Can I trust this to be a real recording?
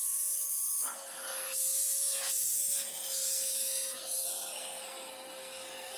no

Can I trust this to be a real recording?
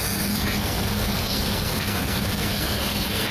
no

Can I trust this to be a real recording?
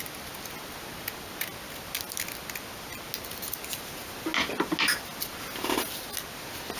yes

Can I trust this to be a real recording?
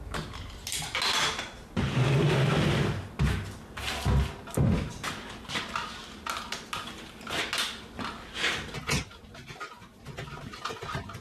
yes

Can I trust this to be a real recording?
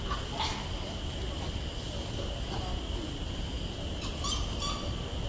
yes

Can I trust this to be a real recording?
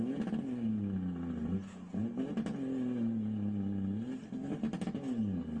yes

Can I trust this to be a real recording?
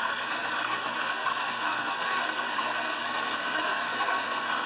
no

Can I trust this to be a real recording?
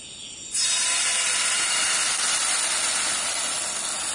yes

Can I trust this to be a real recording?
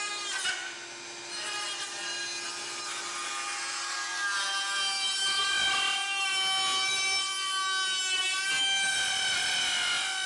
yes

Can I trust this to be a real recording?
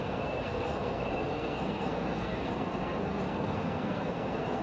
no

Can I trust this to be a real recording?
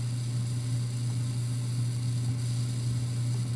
yes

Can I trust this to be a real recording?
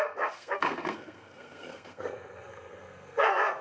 no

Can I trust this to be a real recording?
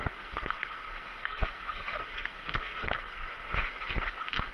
no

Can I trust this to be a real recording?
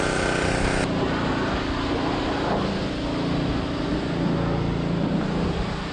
yes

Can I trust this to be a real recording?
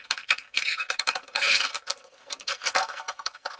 no